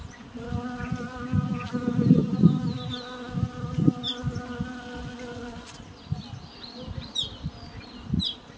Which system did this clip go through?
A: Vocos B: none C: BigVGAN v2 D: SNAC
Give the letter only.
B